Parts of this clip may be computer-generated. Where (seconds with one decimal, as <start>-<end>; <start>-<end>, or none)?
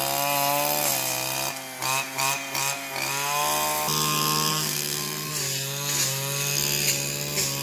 4.5-5.3